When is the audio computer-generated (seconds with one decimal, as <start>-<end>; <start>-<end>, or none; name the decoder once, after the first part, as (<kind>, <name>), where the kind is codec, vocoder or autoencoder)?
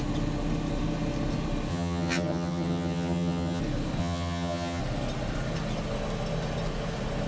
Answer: 1.7-3.6 (vocoder, HiFi-GAN); 4.0-4.8